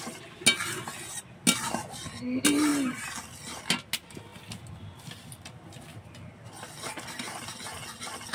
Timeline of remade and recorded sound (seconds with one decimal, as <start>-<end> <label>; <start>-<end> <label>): 0.0-8.3 recorded